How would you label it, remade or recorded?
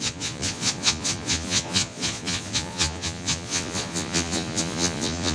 remade